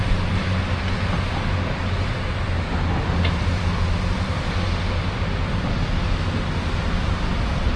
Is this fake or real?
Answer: real